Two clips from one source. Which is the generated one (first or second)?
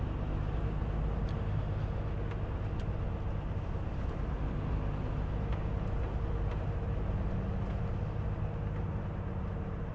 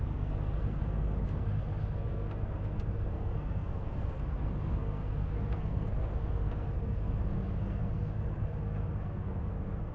second